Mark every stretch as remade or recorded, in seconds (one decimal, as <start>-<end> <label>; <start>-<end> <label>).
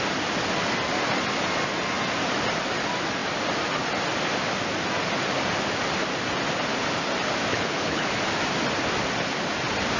0.0-7.5 recorded; 7.5-8.2 remade; 8.2-10.0 recorded